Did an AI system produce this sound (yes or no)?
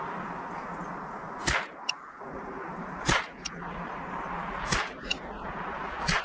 no